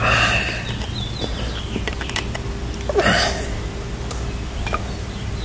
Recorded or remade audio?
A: recorded